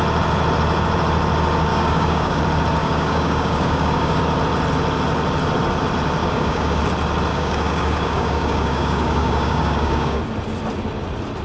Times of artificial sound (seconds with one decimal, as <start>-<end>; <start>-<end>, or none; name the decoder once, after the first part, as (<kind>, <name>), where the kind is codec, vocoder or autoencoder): 1.7-2.4 (codec, DAC); 2.8-4.2; 6.2-6.8; 7.3-10.2